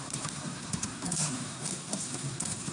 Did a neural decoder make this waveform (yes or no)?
yes